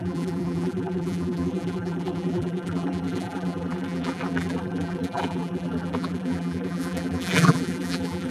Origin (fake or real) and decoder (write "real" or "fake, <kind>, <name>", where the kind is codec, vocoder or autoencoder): fake, vocoder, BigVGAN v2